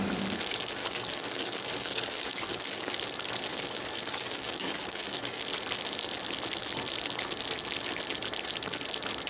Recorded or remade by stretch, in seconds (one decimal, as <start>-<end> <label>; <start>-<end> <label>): 0.0-0.8 recorded; 0.8-2.9 remade; 2.9-3.5 recorded; 3.5-5.4 remade; 5.4-9.3 recorded